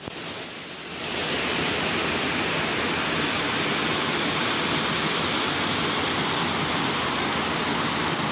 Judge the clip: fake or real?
real